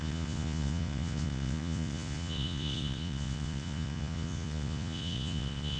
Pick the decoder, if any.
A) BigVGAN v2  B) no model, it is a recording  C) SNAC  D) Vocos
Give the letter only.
D